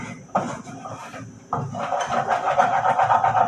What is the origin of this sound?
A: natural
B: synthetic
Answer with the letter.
A